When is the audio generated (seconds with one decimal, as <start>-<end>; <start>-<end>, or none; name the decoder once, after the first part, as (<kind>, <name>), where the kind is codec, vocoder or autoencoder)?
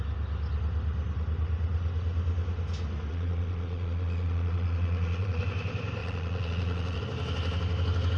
3.1-5.4 (vocoder, Vocos); 6.0-7.0